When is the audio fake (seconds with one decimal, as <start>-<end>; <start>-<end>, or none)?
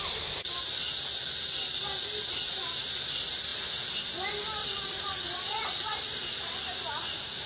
4.6-6.0